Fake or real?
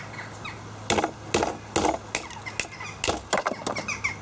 real